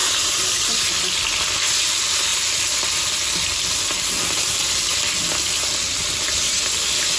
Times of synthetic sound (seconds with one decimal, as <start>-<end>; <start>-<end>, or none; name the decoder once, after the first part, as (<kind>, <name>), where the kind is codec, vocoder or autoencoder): none

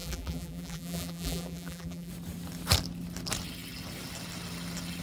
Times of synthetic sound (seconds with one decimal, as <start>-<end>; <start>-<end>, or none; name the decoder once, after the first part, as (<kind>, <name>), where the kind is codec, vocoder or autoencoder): 0.0-2.1 (vocoder, BigVGAN v2)